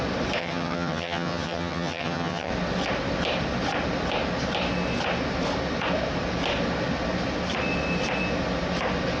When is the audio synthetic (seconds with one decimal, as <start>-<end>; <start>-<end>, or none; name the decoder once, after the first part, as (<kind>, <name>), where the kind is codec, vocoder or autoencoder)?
0.4-2.5 (vocoder, HiFi-GAN)